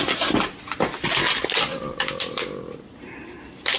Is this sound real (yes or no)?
yes